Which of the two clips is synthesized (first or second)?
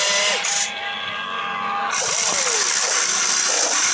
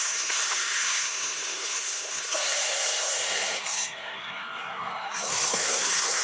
second